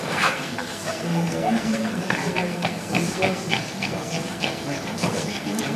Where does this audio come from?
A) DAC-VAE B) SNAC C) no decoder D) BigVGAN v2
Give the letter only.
B